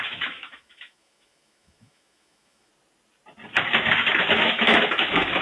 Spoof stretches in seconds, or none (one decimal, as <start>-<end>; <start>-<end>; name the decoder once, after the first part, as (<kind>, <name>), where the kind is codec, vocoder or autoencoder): 0.0-2.7 (autoencoder, DAC-VAE); 4.3-5.4